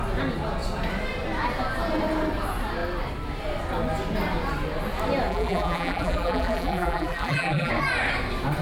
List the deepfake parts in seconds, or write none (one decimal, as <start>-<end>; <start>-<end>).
5.3-7.7